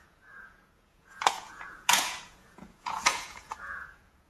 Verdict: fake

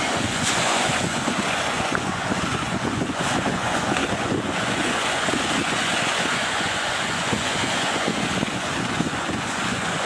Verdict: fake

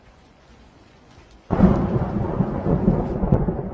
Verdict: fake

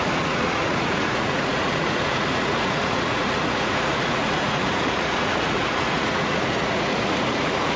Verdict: fake